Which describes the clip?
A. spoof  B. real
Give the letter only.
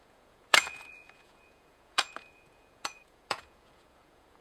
A